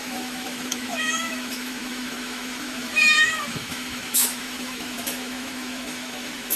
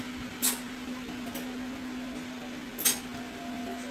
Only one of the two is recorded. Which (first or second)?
second